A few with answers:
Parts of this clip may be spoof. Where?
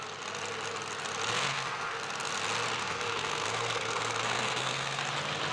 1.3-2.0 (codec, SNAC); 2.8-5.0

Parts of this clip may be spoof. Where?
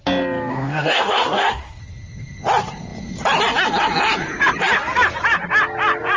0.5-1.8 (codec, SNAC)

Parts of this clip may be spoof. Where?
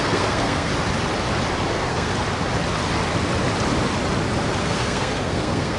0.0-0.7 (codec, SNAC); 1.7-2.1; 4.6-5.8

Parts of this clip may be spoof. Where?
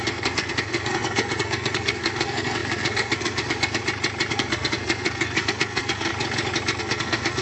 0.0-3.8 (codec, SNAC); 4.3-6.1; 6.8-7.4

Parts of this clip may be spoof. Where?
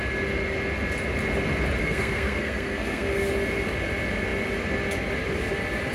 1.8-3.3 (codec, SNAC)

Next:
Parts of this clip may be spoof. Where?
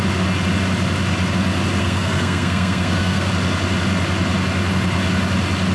1.8-3.3 (codec, SNAC)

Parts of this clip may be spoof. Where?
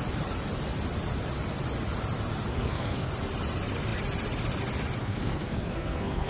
2.5-3.1 (codec, SNAC); 5.0-6.3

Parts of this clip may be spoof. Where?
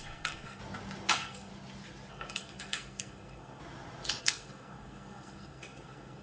0.0-0.6 (codec, SNAC); 1.1-1.5; 2.1-3.6; 4.2-6.2